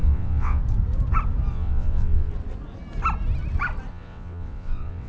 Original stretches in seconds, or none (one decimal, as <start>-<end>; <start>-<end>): 0.6-1.5; 2.3-3.9